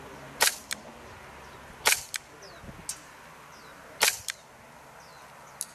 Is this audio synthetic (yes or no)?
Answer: no